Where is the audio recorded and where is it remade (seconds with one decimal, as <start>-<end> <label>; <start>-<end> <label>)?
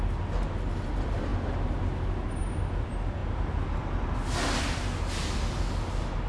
0.0-6.3 recorded